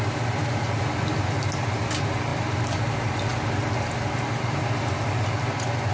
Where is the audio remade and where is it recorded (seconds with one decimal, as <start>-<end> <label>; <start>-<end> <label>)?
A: 0.0-5.9 recorded